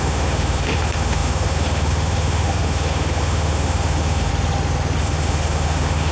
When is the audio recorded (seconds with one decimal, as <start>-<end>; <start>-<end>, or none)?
4.3-5.0